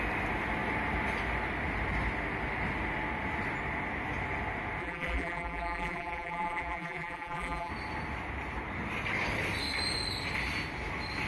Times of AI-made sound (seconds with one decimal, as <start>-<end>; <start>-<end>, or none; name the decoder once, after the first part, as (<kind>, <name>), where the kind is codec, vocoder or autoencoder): 4.8-7.7 (vocoder, BigVGAN v2)